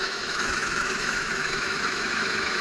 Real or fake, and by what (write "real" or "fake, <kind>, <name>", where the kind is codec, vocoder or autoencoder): fake, autoencoder, DAC-VAE